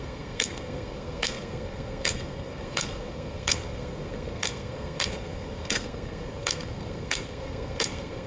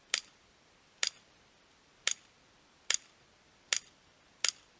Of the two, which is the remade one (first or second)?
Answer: first